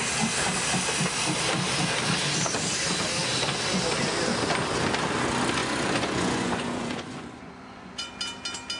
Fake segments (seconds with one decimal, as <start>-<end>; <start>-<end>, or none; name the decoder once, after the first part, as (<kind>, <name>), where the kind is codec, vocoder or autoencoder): 5.6-8.1 (vocoder, Vocos)